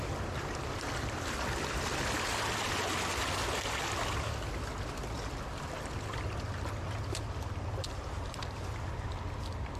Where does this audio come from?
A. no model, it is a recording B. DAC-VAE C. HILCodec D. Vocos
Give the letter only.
A